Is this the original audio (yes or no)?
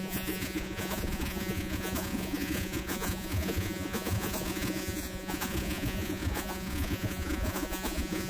no